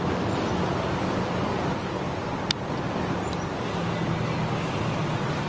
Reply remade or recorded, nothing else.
recorded